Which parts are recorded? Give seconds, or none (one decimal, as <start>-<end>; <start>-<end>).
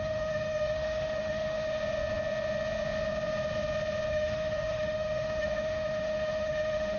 1.8-4.1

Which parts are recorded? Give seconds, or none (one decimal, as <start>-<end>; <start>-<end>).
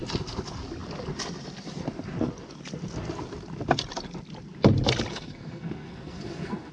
0.0-5.1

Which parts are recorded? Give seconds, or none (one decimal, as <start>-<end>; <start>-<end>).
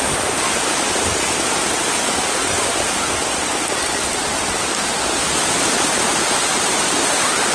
1.1-5.4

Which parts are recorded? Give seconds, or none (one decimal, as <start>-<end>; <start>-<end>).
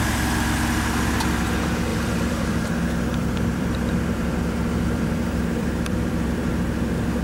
0.0-1.9; 2.7-3.1; 6.5-7.2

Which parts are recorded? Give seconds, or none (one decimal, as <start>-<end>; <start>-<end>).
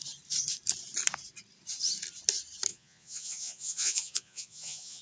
0.0-2.7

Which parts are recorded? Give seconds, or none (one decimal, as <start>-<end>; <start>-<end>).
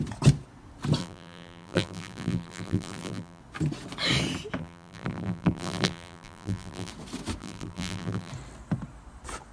0.0-1.0; 3.4-4.6; 6.9-7.4; 8.3-9.5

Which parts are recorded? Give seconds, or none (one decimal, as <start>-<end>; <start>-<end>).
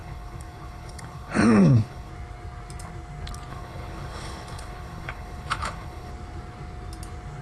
2.1-3.5; 6.1-7.4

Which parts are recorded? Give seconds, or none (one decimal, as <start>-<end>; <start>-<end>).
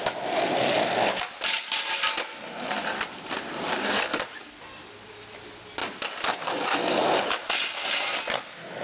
0.0-8.8